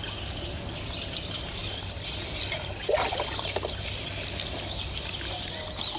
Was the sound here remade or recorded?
recorded